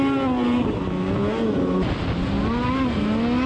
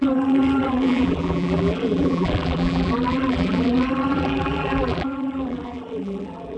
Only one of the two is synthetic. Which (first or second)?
second